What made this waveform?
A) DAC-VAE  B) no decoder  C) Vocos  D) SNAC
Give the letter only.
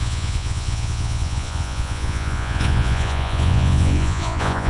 C